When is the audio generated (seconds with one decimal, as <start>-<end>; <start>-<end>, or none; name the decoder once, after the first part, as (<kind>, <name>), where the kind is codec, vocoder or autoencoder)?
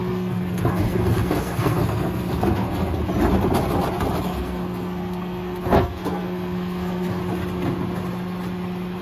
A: 0.0-3.0 (codec, SNAC); 4.2-7.2